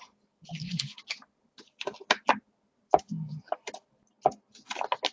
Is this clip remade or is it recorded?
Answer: recorded